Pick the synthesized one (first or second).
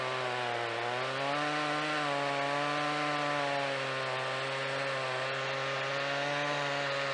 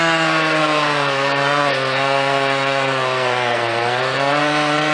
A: second